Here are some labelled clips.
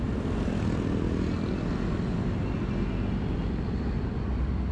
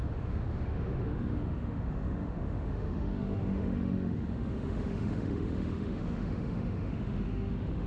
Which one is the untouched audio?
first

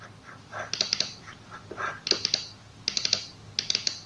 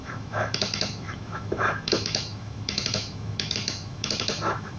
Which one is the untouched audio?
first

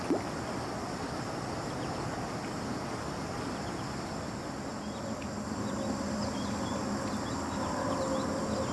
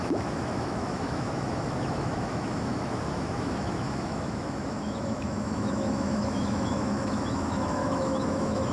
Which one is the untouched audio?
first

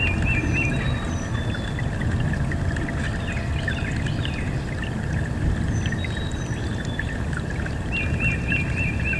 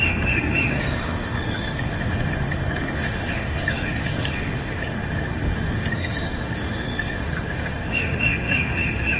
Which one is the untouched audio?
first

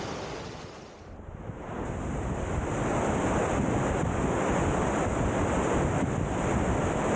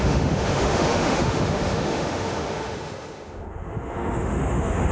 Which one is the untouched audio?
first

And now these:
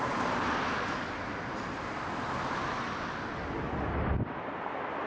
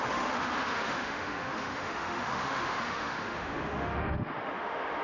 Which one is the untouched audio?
first